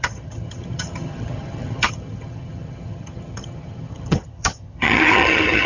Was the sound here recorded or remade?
remade